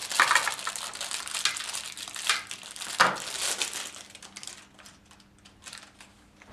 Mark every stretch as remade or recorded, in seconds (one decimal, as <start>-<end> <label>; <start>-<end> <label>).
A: 0.0-6.5 recorded